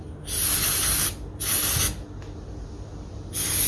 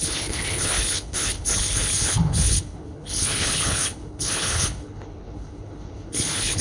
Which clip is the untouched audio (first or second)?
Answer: first